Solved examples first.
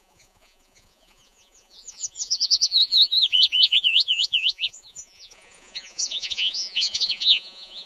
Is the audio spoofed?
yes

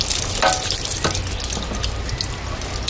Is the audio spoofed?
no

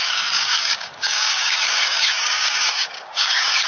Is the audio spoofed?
yes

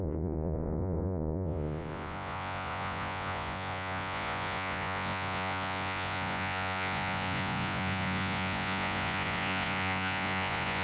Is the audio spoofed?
yes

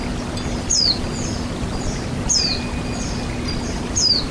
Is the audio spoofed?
yes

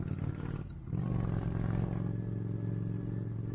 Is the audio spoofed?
no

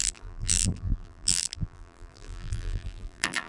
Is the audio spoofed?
yes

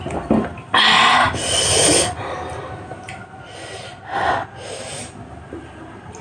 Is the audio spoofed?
no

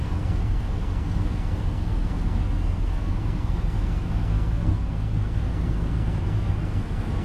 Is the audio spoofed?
yes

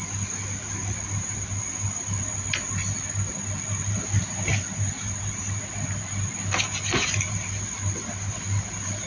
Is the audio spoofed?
no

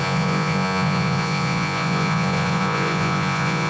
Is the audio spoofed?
yes